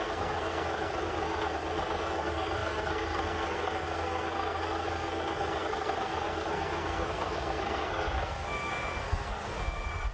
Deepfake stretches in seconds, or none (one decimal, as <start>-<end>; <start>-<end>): 0.0-10.1